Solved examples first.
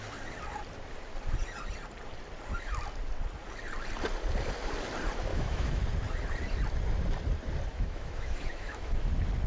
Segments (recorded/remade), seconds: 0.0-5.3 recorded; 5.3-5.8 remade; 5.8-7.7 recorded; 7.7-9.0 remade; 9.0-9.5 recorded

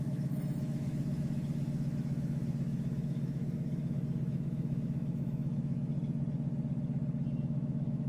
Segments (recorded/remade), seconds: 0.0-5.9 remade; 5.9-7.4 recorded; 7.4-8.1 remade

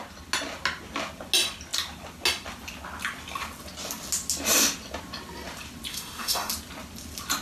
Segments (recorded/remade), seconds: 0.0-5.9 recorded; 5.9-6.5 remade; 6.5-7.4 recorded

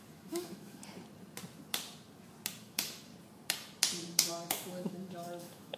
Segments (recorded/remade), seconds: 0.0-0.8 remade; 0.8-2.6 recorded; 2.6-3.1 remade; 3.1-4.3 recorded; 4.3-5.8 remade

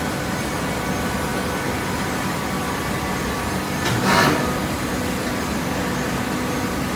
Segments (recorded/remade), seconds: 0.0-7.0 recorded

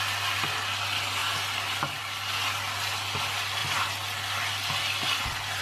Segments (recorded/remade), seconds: 0.0-5.6 recorded

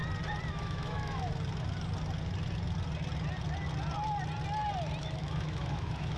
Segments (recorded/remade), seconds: 0.0-0.5 recorded; 0.5-1.3 remade; 1.3-5.0 recorded; 5.0-6.2 remade

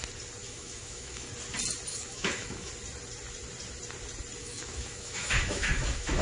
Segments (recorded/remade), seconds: 0.0-0.4 recorded; 0.4-1.3 remade; 1.3-1.9 recorded; 1.9-2.7 remade; 2.7-4.4 recorded; 4.4-6.2 remade